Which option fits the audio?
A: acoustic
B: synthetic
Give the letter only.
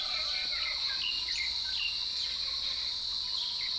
A